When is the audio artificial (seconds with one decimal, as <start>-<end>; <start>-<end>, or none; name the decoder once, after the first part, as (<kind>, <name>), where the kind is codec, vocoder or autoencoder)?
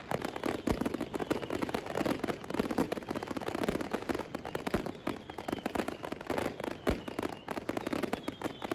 none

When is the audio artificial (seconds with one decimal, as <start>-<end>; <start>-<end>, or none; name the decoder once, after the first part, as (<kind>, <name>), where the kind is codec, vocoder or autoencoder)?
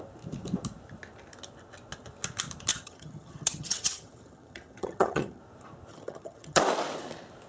2.7-5.4 (vocoder, HiFi-GAN); 5.9-6.6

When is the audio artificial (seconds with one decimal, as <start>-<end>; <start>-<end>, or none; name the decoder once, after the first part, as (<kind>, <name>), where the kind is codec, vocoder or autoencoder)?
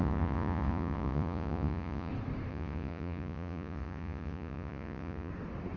0.0-2.1 (vocoder, Vocos); 2.5-5.3